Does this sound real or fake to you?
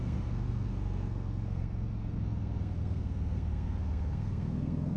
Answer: fake